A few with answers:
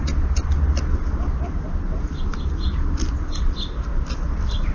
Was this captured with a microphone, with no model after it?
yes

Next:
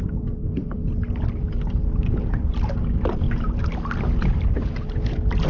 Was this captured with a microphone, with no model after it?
yes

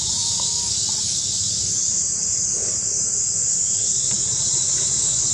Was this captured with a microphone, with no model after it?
no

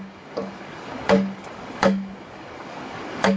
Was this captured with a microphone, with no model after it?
no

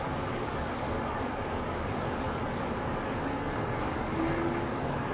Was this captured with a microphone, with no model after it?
no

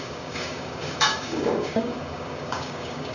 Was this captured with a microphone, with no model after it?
no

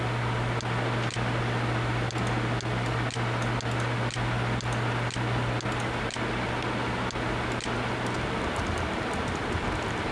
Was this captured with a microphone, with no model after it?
yes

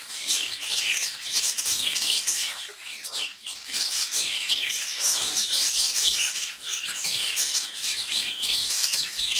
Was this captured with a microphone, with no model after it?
no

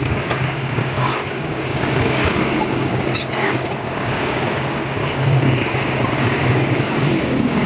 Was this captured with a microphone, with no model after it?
no